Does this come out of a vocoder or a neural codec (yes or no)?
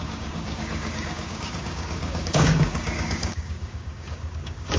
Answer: yes